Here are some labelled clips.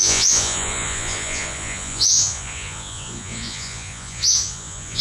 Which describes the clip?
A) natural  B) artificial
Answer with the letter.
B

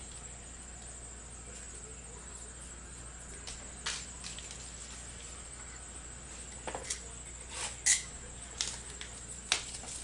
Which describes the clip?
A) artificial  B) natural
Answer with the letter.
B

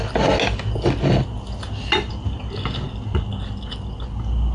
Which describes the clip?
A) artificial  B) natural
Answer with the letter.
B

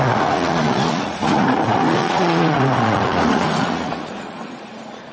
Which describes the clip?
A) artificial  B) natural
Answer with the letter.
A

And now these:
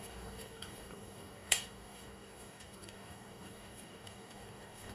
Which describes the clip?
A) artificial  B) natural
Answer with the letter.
A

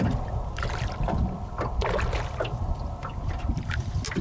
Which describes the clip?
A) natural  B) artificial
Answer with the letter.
A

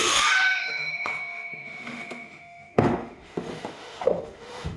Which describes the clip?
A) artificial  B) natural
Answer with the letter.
A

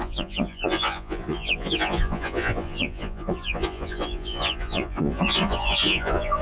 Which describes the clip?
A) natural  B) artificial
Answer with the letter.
B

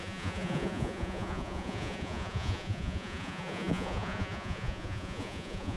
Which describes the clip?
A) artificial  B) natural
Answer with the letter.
A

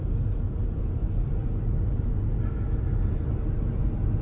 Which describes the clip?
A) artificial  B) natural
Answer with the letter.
B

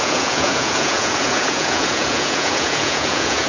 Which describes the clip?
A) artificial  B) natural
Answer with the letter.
A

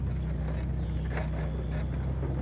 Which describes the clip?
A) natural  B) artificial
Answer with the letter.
A